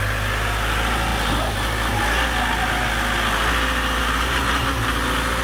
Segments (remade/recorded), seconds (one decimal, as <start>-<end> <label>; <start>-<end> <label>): 0.0-5.4 recorded